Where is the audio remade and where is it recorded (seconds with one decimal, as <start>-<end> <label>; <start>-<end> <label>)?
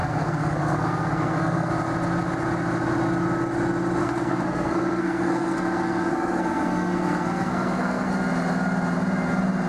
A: 0.0-1.7 remade; 1.7-4.0 recorded; 4.0-8.1 remade; 8.1-9.7 recorded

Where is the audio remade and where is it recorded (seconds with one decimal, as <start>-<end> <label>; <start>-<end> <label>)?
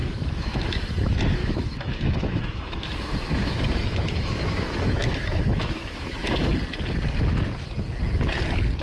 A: 0.0-0.8 remade; 0.8-1.4 recorded; 1.4-6.5 remade; 6.5-8.8 recorded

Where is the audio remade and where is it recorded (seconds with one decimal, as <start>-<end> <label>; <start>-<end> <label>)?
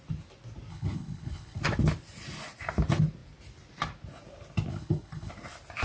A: 0.0-0.7 recorded; 0.7-1.6 remade; 1.6-4.7 recorded; 4.7-5.3 remade; 5.3-5.8 recorded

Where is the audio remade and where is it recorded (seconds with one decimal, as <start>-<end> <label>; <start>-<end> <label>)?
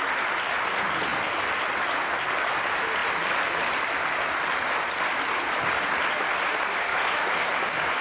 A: 0.0-6.9 recorded; 6.9-7.4 remade; 7.4-8.0 recorded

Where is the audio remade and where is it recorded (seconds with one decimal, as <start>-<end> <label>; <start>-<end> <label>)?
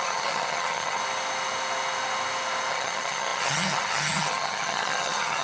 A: 0.0-1.0 remade; 1.0-2.7 recorded; 2.7-5.4 remade